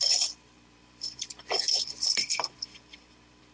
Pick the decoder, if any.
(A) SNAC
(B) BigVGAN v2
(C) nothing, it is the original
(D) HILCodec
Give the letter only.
B